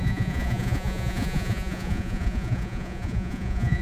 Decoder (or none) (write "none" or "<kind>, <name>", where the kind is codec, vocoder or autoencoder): vocoder, Vocos